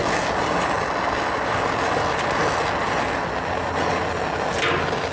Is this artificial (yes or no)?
no